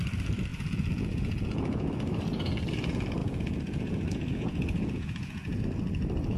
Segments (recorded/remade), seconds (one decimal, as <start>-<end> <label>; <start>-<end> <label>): 0.0-0.5 recorded; 0.5-1.9 remade; 1.9-3.2 recorded; 3.2-5.6 remade; 5.6-6.4 recorded